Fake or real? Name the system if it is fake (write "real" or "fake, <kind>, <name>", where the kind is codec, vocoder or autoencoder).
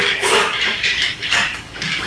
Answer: fake, codec, DAC